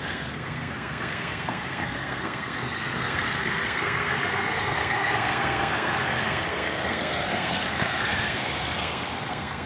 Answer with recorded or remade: remade